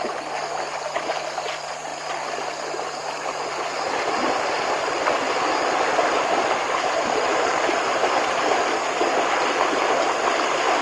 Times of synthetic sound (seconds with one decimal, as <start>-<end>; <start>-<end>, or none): none